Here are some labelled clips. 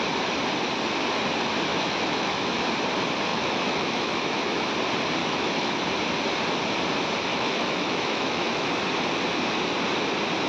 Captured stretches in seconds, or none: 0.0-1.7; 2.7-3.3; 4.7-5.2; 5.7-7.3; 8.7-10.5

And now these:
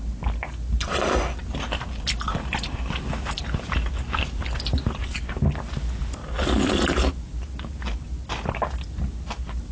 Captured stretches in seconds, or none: 0.0-2.3; 3.1-6.0; 7.1-9.7

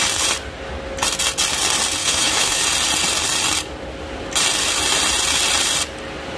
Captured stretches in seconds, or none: 0.0-2.0; 2.6-6.4

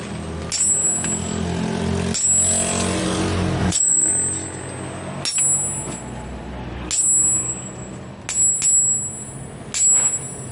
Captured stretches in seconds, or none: 0.0-3.6; 4.1-10.5

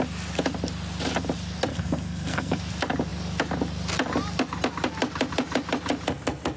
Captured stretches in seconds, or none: 0.0-1.7; 2.6-6.6